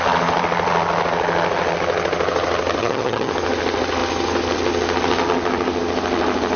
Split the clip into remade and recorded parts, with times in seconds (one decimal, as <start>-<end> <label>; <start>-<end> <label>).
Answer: 0.0-2.8 recorded; 2.8-3.3 remade; 3.3-6.6 recorded